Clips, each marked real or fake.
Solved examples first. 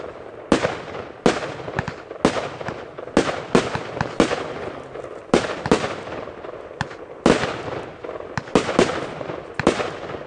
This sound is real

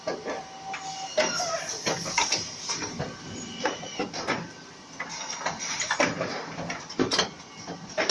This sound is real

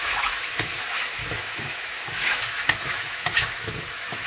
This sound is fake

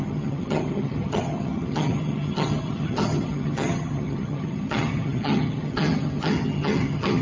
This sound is fake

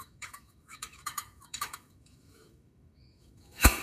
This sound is fake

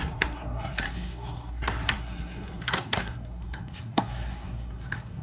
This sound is fake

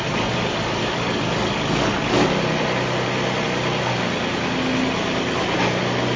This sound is real